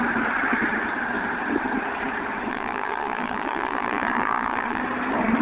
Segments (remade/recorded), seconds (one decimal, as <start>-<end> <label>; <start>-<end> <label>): 0.0-2.5 recorded; 2.5-4.8 remade; 4.8-5.4 recorded